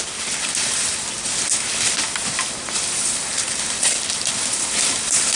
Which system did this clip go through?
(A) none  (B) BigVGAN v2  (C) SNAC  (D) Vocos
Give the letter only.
A